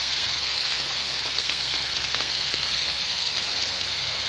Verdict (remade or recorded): remade